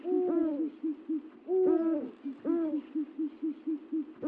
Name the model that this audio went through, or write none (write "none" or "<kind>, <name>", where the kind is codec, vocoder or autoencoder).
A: none